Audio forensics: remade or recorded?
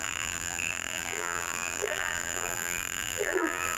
remade